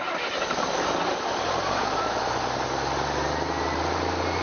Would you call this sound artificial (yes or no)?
yes